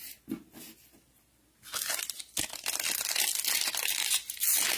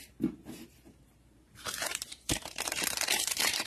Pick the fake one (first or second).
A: second